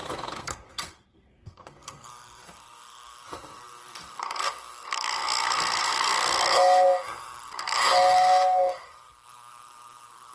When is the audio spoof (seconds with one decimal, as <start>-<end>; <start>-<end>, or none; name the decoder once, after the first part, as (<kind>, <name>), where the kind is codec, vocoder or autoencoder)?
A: 0.0-10.3 (codec, SNAC)